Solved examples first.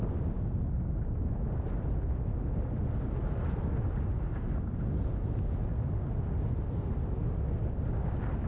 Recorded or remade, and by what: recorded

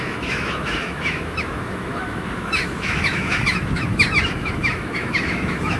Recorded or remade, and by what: remade, autoencoder, DAC-VAE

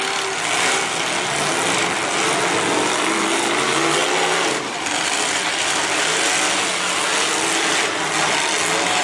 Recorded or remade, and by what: recorded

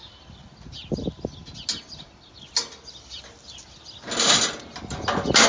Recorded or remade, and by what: recorded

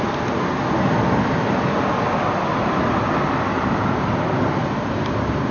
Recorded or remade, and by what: recorded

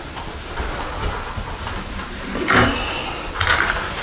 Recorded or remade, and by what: recorded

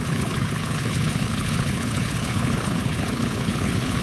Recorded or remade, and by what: remade, codec, HILCodec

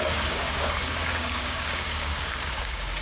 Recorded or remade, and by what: remade, codec, DAC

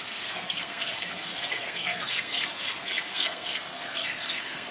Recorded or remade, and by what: remade, codec, SNAC